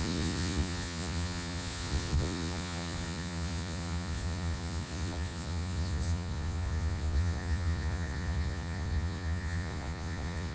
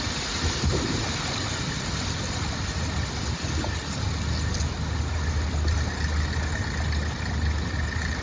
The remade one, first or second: first